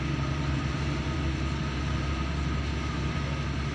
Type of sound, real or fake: fake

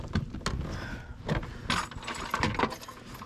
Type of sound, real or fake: real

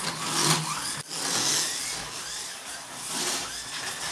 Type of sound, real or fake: real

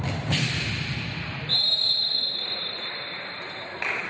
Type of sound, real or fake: fake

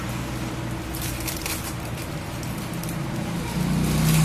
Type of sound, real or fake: real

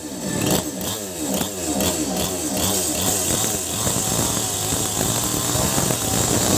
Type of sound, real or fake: real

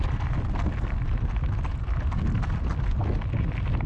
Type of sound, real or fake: real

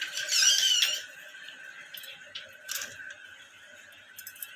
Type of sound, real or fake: real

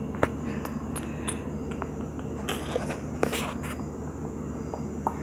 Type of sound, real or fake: real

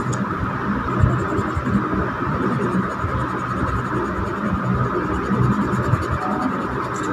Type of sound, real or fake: real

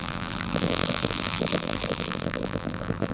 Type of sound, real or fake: fake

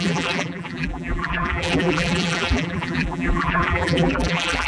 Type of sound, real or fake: fake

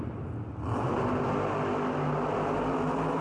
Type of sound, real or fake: real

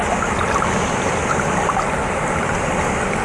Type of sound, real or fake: real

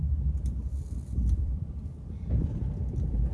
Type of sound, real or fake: fake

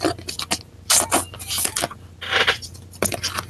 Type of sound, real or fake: real